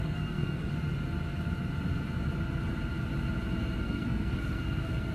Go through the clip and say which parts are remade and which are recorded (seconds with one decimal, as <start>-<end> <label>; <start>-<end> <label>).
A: 0.0-0.7 remade; 0.7-3.8 recorded; 3.8-5.1 remade